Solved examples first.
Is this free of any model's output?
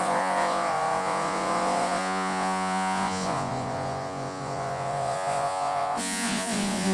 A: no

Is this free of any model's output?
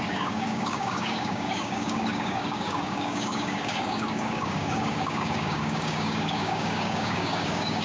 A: no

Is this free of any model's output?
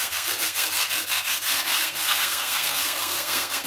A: no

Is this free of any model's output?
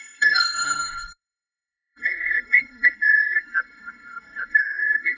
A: no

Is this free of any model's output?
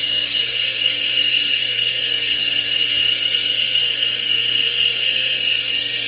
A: no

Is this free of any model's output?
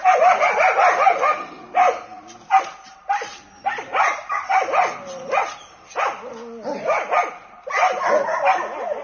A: yes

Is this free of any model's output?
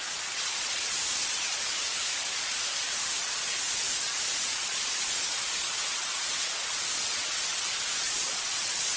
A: no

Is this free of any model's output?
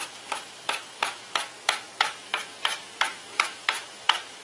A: no